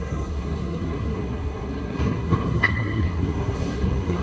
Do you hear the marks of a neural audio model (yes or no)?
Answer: yes